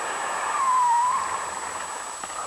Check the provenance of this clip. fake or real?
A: real